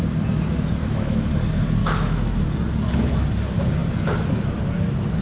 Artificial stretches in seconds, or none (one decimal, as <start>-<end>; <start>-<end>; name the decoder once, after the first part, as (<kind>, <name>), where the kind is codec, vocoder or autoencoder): 0.8-1.3 (autoencoder, DAC-VAE); 1.8-2.5